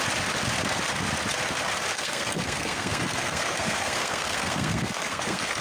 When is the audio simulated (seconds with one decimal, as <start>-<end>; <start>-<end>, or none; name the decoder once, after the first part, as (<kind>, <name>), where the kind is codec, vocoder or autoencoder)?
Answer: 1.9-5.6 (codec, SNAC)